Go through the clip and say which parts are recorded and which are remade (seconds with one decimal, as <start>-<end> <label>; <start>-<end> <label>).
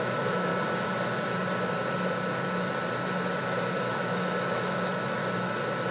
0.0-0.5 remade; 0.5-4.0 recorded; 4.0-5.2 remade; 5.2-5.9 recorded